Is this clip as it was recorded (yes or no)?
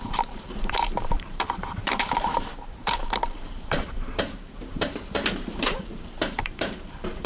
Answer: no